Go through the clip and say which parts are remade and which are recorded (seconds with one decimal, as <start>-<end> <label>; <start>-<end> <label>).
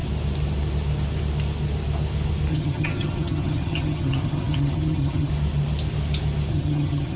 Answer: 0.0-2.5 recorded; 2.5-5.3 remade; 5.3-6.5 recorded; 6.5-7.2 remade